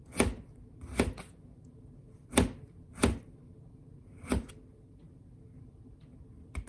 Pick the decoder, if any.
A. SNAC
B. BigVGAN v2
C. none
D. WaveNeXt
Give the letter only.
C